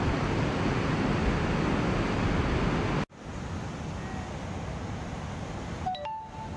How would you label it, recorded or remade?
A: recorded